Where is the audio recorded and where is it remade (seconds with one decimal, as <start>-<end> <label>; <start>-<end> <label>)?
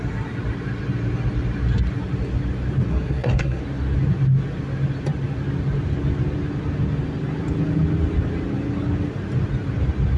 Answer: 0.0-2.9 recorded; 2.9-3.6 remade; 3.6-10.2 recorded